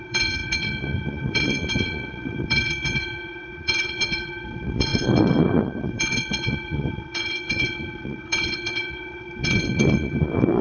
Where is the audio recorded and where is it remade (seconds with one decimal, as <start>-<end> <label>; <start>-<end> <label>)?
0.0-10.6 remade